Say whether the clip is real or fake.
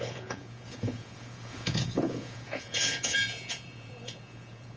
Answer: fake